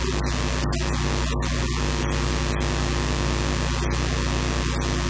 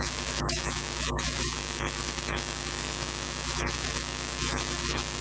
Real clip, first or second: first